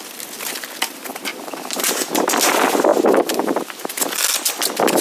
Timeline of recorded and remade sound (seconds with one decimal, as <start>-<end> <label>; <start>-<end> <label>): 0.0-1.3 recorded; 1.3-2.0 remade; 2.0-2.9 recorded; 2.9-4.0 remade; 4.0-5.0 recorded